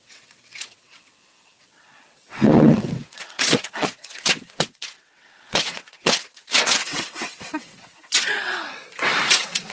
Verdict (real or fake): fake